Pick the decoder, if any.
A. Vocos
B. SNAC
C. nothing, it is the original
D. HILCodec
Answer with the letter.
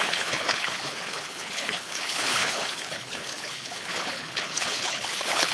D